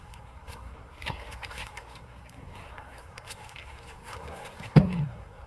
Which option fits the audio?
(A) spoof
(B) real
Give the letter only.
A